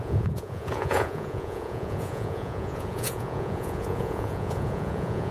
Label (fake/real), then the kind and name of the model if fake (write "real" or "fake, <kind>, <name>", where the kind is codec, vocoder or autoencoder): fake, vocoder, Vocos